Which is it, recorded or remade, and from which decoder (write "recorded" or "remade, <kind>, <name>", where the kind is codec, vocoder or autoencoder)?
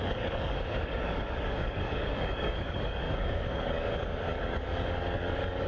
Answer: remade, codec, DAC